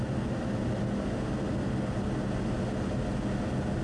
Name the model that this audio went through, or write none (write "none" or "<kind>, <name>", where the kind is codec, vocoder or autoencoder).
none